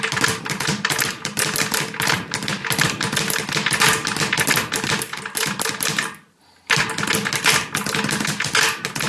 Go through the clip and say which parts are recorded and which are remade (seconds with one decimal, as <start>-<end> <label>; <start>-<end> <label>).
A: 0.0-9.1 recorded